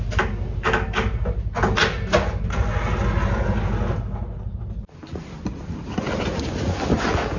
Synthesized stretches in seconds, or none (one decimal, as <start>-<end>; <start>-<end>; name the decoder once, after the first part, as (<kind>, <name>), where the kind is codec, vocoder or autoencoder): none